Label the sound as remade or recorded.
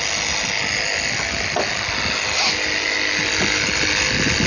recorded